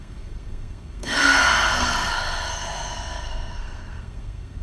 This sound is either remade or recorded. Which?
remade